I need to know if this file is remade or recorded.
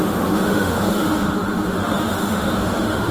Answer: remade